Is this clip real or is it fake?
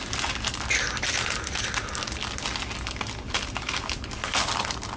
real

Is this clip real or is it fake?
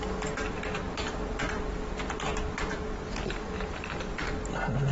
real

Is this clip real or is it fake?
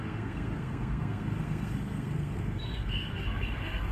fake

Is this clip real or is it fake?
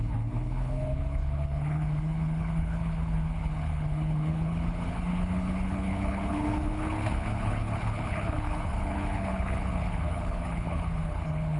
fake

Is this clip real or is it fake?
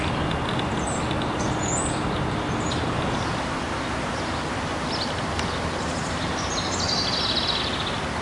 real